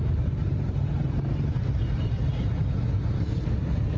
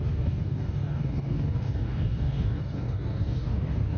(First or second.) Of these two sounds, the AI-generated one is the second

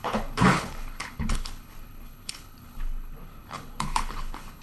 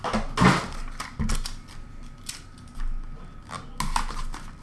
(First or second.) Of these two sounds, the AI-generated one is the first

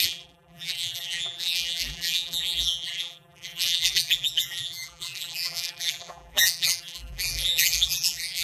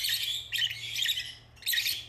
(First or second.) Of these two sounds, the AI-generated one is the first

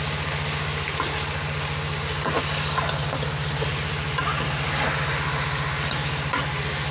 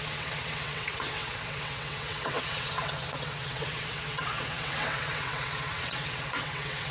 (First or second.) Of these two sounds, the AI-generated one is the second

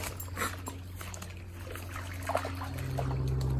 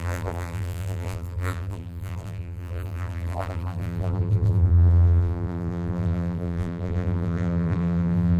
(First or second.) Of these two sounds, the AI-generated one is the second